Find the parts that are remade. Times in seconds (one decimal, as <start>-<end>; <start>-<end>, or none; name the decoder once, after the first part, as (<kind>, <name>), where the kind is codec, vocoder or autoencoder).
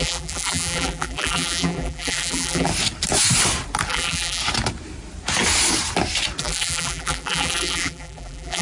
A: 0.0-2.7 (vocoder, BigVGAN v2); 3.9-4.4; 6.4-8.6